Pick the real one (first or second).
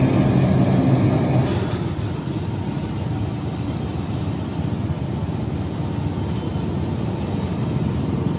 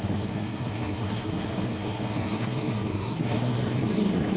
first